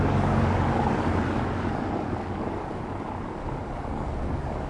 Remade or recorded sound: remade